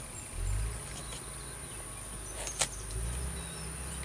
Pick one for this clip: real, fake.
real